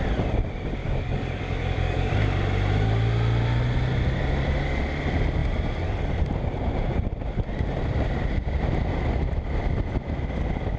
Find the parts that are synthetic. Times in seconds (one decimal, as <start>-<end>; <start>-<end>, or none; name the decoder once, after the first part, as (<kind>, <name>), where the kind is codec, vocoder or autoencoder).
0.8-2.1 (codec, DAC)